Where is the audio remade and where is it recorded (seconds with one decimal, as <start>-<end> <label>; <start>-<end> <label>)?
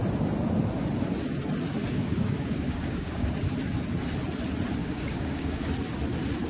0.0-1.8 recorded; 1.8-3.3 remade; 3.3-4.8 recorded; 4.8-5.7 remade; 5.7-6.5 recorded